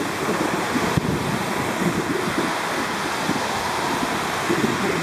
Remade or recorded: recorded